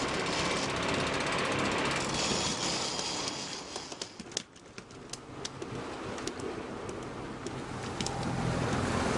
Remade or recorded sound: recorded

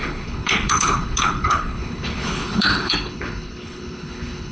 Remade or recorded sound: remade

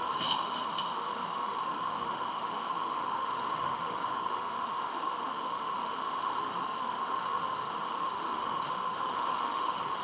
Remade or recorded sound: remade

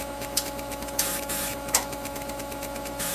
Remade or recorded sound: remade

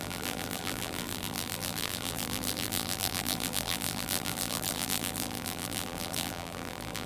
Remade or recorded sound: remade